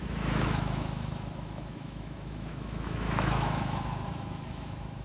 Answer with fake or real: fake